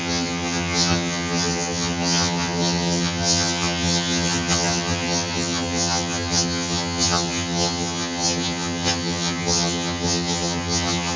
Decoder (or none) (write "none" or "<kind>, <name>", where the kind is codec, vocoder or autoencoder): vocoder, HiFi-GAN